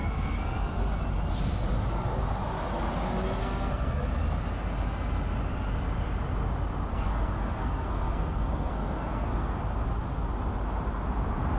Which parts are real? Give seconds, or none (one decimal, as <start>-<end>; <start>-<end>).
0.8-3.4; 4.0-6.9; 9.6-11.6